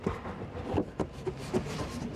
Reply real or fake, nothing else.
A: real